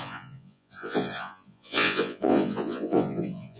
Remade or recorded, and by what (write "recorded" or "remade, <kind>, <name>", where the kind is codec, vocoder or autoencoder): remade, vocoder, Vocos